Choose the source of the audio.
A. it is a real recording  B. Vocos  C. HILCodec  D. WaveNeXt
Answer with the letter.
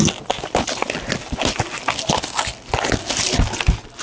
A